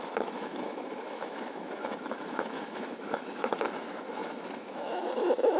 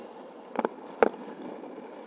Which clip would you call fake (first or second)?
first